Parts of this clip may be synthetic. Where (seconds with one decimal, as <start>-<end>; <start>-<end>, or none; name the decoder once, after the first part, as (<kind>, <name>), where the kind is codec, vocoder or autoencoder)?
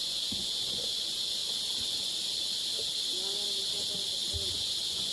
0.0-1.4 (vocoder, Vocos); 4.5-5.1